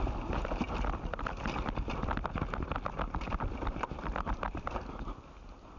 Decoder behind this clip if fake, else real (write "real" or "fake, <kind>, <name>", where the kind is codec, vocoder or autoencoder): real